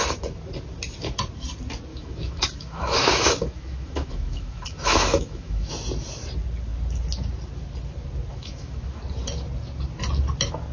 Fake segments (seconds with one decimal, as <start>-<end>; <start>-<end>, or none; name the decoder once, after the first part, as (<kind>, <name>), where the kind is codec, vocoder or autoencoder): 1.9-5.7 (autoencoder, DAC-VAE); 8.3-9.0